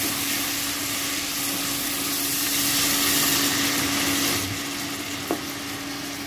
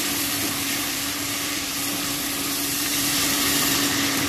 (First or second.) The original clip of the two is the first